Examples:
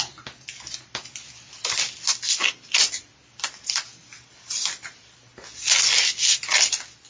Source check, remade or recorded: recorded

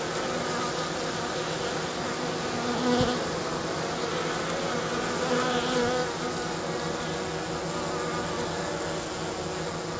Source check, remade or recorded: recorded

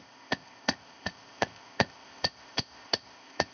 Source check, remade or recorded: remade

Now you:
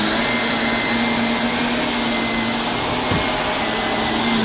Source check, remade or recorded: recorded